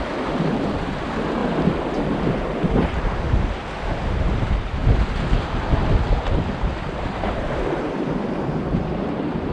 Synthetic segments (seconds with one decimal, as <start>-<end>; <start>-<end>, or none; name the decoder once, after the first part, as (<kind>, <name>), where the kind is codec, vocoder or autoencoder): 0.0-1.4 (vocoder, BigVGAN v2); 4.2-4.8; 6.7-9.5